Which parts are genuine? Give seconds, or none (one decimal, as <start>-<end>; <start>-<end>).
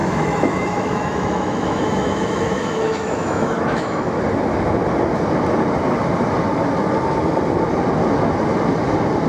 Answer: 4.2-9.3